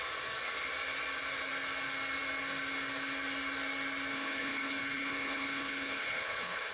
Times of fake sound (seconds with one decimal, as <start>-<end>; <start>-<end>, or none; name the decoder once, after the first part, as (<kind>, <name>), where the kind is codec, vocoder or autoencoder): 4.1-6.7 (codec, HILCodec)